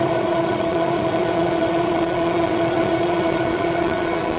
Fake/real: fake